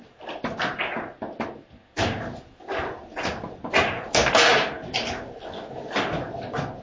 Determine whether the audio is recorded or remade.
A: recorded